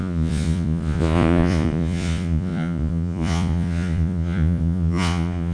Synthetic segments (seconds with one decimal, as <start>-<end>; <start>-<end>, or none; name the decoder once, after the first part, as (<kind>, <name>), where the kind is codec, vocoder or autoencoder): 0.0-5.5 (vocoder, Vocos)